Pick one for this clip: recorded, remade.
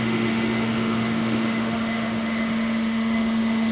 remade